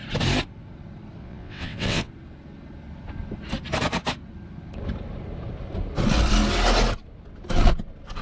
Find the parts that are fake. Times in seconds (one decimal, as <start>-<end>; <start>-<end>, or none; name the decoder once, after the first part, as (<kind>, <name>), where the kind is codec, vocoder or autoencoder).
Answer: 1.2-2.1 (vocoder, WaveNeXt)